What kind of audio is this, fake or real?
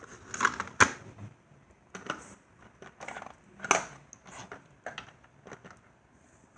real